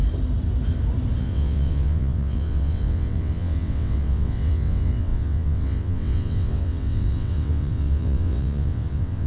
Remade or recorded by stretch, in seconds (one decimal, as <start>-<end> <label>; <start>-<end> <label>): 0.0-1.2 recorded; 1.2-9.3 remade